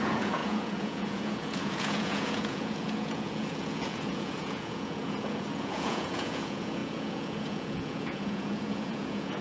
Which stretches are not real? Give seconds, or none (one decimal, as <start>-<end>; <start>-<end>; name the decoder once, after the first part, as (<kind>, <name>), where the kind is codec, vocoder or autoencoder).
0.0-9.4 (vocoder, Vocos)